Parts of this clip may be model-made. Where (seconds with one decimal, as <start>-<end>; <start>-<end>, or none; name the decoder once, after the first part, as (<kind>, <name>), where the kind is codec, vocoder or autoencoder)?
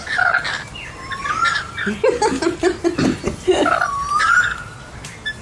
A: none